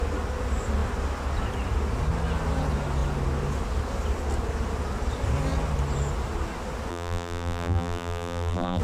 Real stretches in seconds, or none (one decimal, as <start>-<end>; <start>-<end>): 0.0-6.9